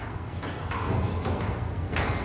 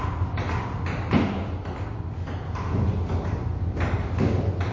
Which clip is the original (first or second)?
second